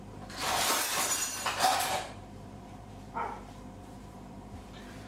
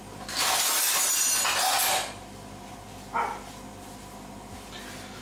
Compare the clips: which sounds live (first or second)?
second